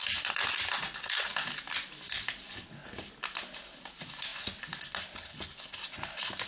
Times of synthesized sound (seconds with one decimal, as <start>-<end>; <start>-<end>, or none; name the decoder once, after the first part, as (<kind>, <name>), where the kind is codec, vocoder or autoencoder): none